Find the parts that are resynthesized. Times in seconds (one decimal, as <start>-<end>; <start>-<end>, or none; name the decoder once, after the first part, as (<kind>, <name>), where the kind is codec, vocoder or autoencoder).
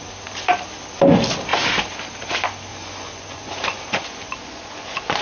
2.7-5.2 (vocoder, Vocos)